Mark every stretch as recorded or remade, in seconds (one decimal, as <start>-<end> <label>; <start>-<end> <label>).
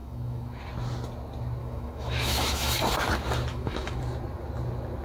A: 0.0-0.6 remade; 0.6-1.6 recorded; 1.6-2.9 remade; 2.9-3.5 recorded; 3.5-4.0 remade; 4.0-5.0 recorded